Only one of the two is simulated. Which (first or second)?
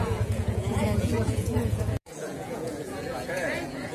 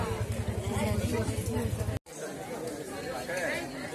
first